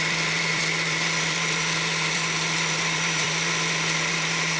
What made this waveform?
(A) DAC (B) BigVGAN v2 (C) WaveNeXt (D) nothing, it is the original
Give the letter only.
B